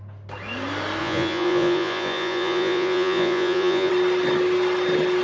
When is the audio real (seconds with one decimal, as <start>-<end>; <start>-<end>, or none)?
0.0-1.0; 3.9-5.2